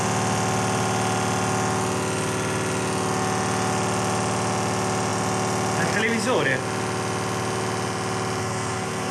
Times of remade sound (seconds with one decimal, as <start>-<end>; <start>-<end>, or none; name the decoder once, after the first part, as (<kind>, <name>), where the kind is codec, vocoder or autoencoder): 8.4-9.1 (codec, SNAC)